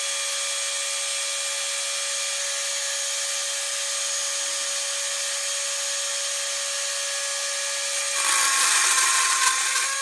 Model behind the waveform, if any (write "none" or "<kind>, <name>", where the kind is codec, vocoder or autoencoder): none